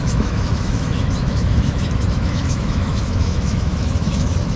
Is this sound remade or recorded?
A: remade